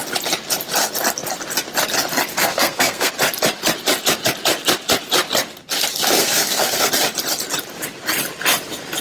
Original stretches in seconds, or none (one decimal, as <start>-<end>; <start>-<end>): 0.0-2.3; 3.1-6.2; 6.9-9.0